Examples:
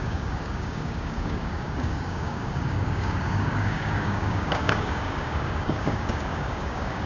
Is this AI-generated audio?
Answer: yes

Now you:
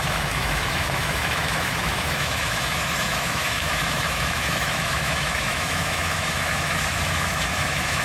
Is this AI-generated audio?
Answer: yes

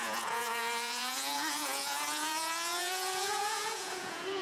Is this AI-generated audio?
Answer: yes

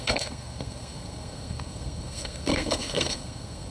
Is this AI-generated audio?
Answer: yes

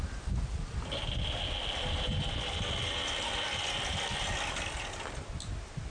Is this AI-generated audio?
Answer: no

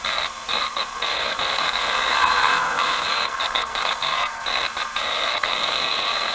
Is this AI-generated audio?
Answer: yes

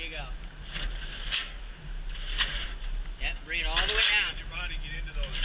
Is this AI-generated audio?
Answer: no